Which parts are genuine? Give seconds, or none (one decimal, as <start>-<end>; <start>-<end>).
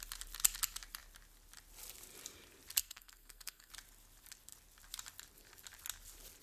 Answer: 0.0-2.8; 3.7-6.4